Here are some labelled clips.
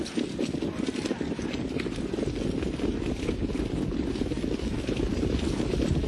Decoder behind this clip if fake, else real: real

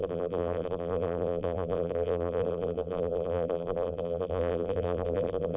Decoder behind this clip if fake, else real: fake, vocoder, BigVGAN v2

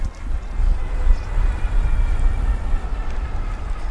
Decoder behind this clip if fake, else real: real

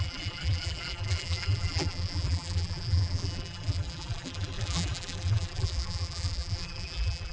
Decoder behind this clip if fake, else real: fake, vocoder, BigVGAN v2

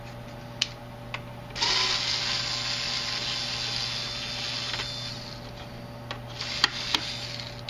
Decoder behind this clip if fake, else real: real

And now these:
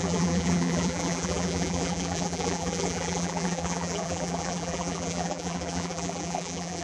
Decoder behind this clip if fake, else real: fake, vocoder, BigVGAN v2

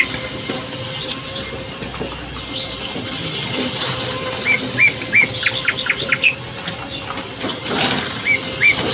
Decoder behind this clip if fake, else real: real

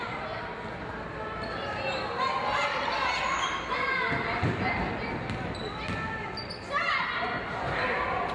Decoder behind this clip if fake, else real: real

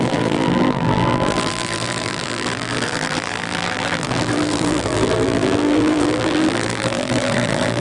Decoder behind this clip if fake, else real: fake, vocoder, BigVGAN v2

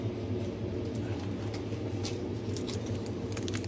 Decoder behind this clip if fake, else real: real